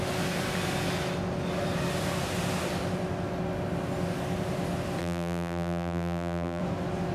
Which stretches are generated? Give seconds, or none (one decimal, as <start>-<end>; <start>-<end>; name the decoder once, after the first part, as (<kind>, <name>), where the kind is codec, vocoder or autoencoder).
5.0-6.6 (vocoder, BigVGAN v2)

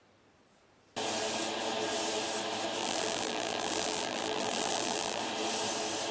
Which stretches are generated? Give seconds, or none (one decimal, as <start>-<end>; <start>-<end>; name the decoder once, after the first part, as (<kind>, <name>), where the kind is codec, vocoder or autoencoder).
2.8-5.2 (vocoder, BigVGAN v2)

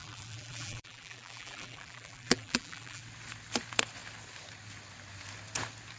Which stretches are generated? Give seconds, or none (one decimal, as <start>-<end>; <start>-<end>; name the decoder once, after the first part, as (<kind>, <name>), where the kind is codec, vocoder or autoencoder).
0.0-3.0 (vocoder, BigVGAN v2)

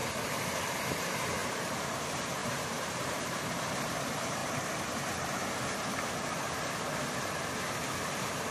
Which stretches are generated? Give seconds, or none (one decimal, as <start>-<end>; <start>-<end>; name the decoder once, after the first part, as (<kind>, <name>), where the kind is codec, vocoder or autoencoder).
0.8-4.4 (vocoder, BigVGAN v2)